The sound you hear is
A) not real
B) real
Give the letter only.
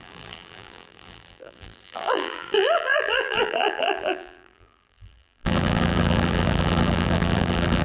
A